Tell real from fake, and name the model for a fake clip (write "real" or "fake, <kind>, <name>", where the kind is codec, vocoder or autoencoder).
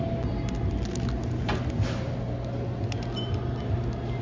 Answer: real